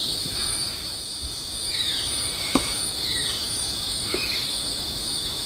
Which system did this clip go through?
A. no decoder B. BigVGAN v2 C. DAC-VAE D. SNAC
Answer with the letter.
C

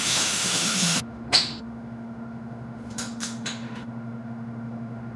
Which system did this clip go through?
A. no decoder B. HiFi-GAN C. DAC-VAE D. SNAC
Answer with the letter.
C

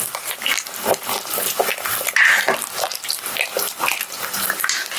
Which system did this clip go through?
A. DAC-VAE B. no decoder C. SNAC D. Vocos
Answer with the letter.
B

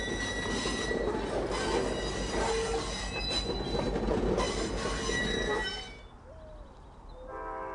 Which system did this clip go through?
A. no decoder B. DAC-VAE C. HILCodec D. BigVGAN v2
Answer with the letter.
A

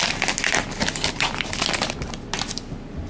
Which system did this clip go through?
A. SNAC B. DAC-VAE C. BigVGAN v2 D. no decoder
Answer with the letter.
D